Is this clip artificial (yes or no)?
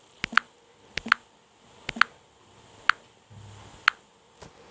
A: no